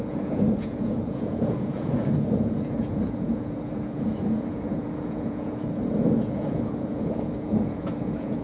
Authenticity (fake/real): fake